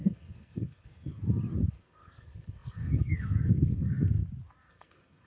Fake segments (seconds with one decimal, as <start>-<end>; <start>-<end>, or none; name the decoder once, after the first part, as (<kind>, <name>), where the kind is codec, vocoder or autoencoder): 0.0-1.2 (codec, SNAC); 1.7-4.2; 4.7-5.3